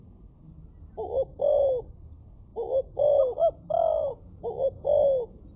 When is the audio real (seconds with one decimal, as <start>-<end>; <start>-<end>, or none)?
0.0-5.6